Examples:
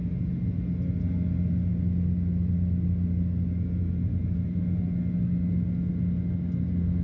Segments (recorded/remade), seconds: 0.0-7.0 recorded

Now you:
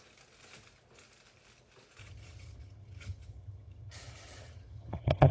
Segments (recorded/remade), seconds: 0.0-2.0 recorded; 2.0-5.3 remade

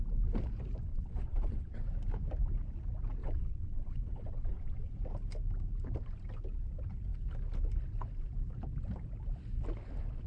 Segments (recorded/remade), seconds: 0.0-0.9 recorded; 0.9-1.9 remade; 1.9-3.2 recorded; 3.2-4.9 remade; 4.9-10.3 recorded

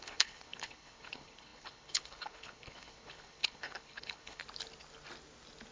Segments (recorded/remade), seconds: 0.0-4.4 remade; 4.4-5.7 recorded

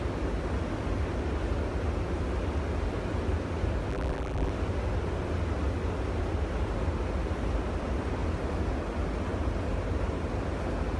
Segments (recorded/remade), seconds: 0.0-3.9 recorded; 3.9-4.5 remade; 4.5-11.0 recorded

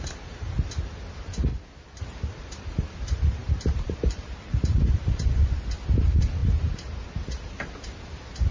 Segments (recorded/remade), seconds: 0.0-1.5 remade; 1.5-2.0 recorded; 2.0-5.4 remade; 5.4-6.0 recorded; 6.0-8.5 remade